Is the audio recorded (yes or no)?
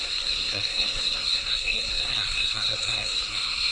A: no